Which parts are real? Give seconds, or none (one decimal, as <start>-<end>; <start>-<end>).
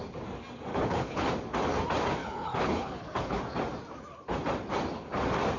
0.0-0.7; 1.3-2.2; 3.4-5.6